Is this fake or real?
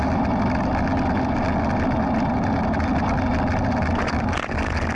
real